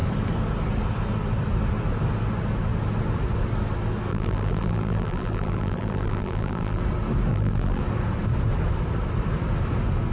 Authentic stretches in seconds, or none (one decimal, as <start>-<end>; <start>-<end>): 0.0-4.1; 6.8-7.3; 7.8-10.1